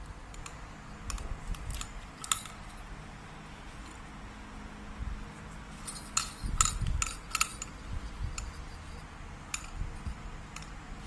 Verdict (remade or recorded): recorded